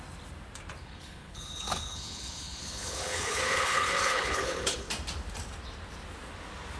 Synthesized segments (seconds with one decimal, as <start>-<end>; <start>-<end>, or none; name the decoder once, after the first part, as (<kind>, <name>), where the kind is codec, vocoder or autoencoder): 0.8-4.9 (codec, HILCodec)